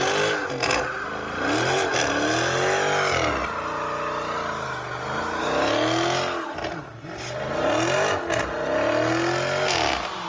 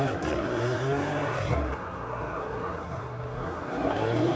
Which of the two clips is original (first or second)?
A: first